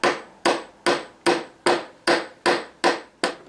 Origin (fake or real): real